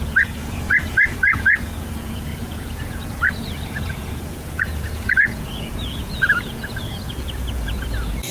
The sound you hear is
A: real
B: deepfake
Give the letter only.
B